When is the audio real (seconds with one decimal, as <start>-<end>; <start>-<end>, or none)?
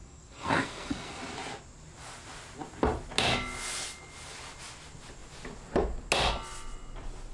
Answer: 1.2-7.3